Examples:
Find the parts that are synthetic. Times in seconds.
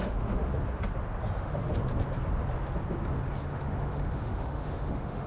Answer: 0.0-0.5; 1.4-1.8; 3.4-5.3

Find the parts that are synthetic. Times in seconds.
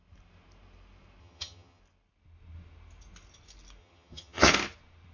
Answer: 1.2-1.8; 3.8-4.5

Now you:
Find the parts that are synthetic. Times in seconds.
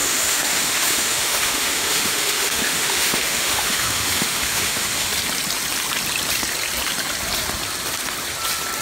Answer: 0.0-5.1